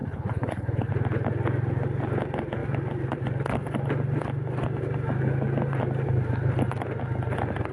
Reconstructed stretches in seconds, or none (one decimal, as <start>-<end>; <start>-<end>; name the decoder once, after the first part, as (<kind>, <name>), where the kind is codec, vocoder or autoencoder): 0.0-0.9 (codec, HILCodec)